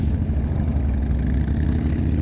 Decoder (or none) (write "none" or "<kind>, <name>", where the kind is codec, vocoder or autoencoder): none